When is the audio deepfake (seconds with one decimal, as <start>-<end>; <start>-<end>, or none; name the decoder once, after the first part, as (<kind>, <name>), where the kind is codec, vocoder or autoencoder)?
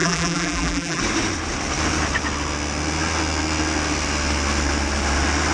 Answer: 0.0-1.0 (vocoder, BigVGAN v2)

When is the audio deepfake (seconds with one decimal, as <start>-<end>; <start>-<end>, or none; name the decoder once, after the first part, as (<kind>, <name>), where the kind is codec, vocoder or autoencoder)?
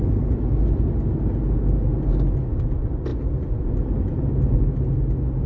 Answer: none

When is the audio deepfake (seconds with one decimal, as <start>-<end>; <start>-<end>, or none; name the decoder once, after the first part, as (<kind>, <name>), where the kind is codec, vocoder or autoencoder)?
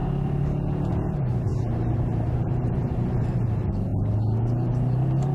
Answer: 0.9-5.3 (vocoder, BigVGAN v2)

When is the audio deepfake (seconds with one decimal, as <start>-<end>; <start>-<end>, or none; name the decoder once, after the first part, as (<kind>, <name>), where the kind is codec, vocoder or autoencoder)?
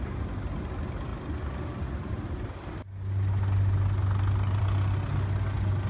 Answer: none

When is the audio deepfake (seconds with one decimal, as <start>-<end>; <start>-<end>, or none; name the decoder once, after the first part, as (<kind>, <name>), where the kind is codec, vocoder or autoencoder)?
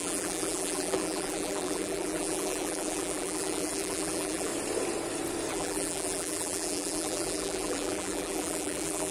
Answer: 0.0-4.5 (vocoder, BigVGAN v2); 5.5-9.1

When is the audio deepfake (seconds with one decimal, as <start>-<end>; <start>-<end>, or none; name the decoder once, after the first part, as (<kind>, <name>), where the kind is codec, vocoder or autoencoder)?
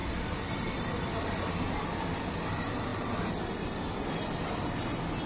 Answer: 0.0-5.3 (vocoder, BigVGAN v2)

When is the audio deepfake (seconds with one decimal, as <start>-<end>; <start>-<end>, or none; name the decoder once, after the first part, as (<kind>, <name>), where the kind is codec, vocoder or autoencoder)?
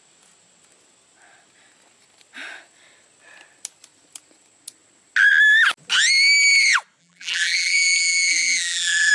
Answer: 7.0-9.1 (vocoder, BigVGAN v2)